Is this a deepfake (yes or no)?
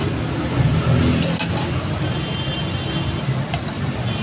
no